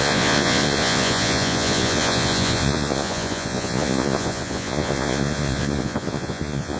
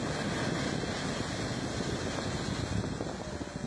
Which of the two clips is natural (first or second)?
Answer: second